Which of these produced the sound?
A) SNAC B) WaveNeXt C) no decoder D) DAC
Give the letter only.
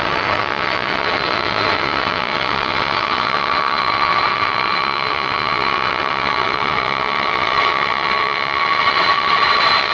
B